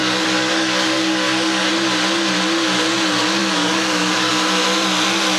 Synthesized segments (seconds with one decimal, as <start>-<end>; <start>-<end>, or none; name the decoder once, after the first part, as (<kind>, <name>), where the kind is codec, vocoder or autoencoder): 0.0-1.7 (codec, DAC); 3.4-4.3